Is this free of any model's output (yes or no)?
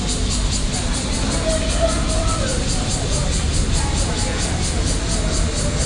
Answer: yes